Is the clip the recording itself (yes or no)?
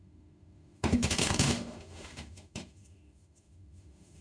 no